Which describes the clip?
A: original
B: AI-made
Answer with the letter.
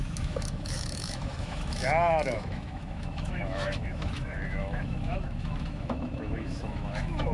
B